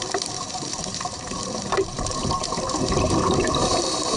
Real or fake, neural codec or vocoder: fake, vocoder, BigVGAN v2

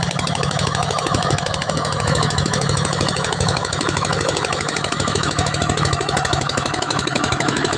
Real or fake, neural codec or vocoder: fake, autoencoder, DAC-VAE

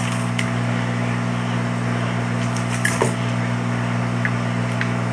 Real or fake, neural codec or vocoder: real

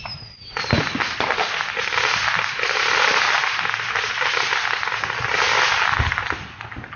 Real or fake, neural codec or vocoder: real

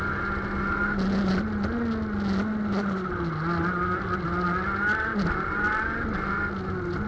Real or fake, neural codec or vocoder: real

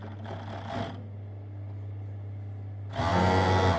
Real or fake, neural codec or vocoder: real